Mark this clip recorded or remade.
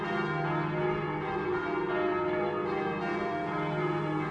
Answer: recorded